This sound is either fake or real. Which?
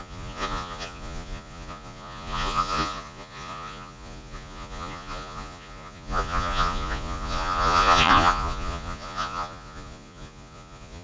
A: fake